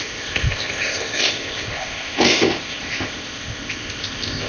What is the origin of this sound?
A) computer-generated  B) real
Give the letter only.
A